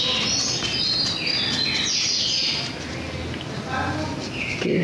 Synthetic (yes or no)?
no